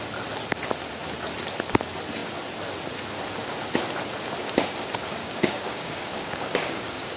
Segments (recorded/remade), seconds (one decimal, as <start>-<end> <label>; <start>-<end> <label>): 0.0-5.2 recorded; 5.2-7.2 remade